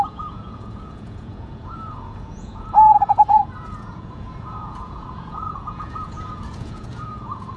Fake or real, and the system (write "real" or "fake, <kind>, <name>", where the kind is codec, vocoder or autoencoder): fake, vocoder, Vocos